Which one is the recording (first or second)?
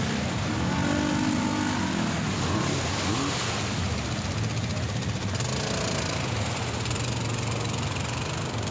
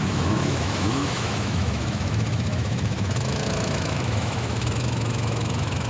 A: first